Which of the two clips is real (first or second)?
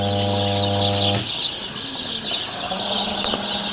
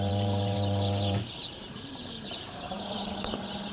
first